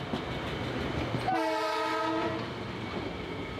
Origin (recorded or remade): recorded